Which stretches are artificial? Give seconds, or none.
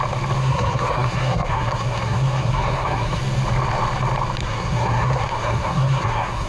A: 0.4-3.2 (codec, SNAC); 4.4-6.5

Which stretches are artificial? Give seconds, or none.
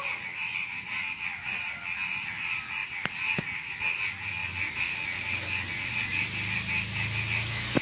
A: none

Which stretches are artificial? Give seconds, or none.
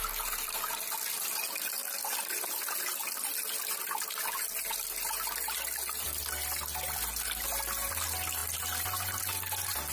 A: none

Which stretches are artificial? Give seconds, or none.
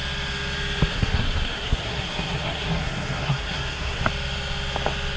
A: 0.9-4.0 (codec, SNAC)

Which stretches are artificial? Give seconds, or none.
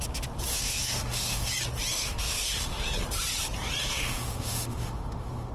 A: 0.5-1.5 (autoencoder, DAC-VAE); 1.9-2.8; 3.8-5.5